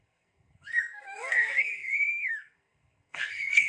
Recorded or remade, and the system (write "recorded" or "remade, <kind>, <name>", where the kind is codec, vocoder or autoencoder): remade, codec, SNAC